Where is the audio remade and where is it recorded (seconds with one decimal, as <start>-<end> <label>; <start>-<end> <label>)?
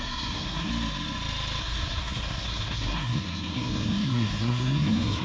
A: 0.0-0.7 remade; 0.7-1.6 recorded; 1.6-5.2 remade